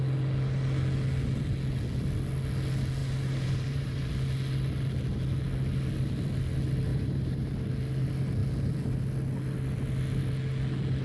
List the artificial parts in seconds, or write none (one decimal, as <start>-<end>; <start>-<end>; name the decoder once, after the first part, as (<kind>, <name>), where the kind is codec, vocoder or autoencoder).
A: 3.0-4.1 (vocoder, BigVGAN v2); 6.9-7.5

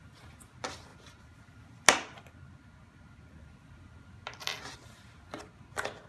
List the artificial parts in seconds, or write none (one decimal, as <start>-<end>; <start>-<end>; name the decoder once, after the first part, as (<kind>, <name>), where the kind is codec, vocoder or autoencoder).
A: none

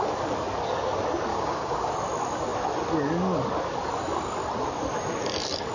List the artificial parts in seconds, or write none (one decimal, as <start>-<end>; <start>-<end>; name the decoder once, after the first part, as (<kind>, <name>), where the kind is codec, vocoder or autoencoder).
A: 1.3-1.9 (codec, DAC)

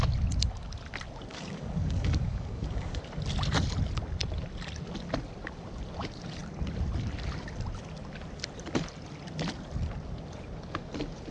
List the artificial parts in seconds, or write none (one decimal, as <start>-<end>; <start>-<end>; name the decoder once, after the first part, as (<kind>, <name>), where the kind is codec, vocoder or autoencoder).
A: 1.3-3.0 (codec, DAC)

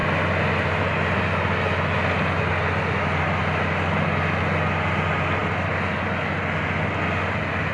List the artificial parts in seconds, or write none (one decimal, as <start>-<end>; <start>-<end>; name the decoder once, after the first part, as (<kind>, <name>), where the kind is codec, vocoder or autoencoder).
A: none

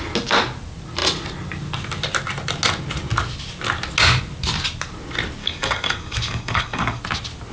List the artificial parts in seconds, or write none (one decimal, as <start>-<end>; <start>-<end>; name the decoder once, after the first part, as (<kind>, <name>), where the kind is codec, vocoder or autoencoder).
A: 5.4-7.0 (codec, DAC)